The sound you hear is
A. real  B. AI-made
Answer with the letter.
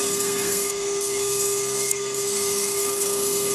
B